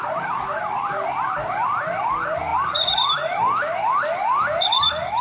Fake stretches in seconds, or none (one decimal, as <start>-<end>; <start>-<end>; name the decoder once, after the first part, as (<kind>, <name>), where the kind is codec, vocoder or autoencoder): none